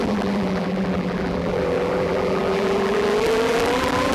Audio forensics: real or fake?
fake